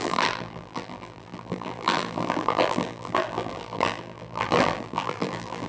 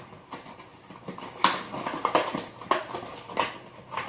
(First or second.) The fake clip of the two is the first